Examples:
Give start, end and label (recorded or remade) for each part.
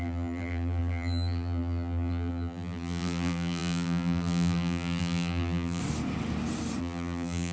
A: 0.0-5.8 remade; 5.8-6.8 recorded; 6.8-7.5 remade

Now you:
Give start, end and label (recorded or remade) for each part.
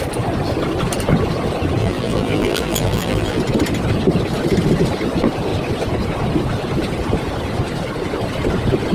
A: 0.0-1.8 recorded; 1.8-3.4 remade; 3.4-8.9 recorded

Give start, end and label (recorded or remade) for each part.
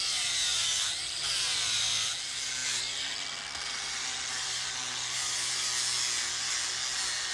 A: 0.0-0.5 recorded; 0.5-1.3 remade; 1.3-2.6 recorded; 2.6-5.5 remade; 5.5-7.3 recorded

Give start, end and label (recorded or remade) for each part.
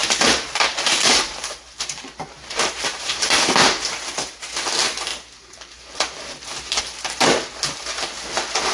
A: 0.0-3.5 remade; 3.5-5.1 recorded; 5.1-6.8 remade; 6.8-8.7 recorded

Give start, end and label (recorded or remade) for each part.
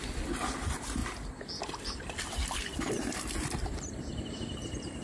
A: 0.0-1.0 remade; 1.0-1.8 recorded; 1.8-5.0 remade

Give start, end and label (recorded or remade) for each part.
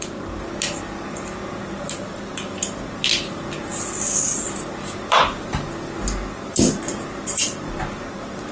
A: 0.0-8.5 recorded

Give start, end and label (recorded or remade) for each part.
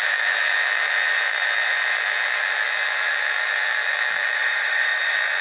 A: 0.0-4.4 remade; 4.4-5.0 recorded; 5.0-5.4 remade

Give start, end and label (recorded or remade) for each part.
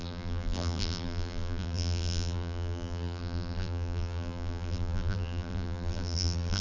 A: 0.0-6.6 remade